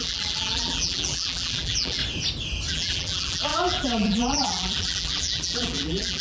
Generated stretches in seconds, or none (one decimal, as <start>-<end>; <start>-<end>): 0.0-2.0; 2.7-6.2